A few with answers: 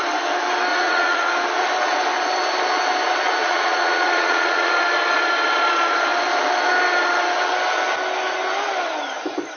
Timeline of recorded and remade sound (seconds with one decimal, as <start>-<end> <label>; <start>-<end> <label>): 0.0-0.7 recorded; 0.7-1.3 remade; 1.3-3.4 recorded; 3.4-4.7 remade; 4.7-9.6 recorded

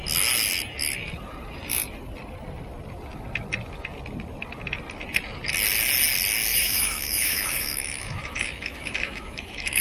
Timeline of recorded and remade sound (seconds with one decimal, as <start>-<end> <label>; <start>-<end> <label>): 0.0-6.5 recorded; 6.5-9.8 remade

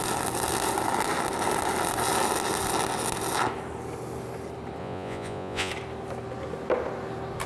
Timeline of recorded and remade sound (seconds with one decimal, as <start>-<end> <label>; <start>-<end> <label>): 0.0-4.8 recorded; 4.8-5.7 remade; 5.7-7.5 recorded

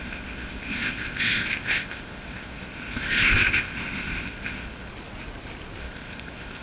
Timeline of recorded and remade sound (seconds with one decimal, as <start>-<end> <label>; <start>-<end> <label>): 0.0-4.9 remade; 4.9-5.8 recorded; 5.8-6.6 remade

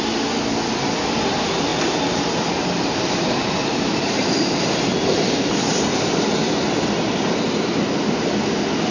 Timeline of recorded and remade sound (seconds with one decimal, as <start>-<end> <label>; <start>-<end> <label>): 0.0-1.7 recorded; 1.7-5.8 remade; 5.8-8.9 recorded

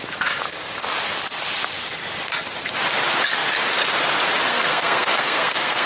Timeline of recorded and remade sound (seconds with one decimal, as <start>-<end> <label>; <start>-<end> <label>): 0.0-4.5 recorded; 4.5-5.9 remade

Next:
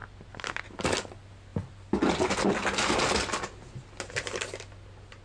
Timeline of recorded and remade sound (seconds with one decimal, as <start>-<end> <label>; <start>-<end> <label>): 0.0-5.2 recorded

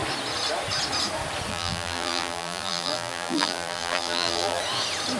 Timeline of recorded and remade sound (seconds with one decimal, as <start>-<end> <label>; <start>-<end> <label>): 0.0-1.5 recorded; 1.5-4.6 remade; 4.6-5.2 recorded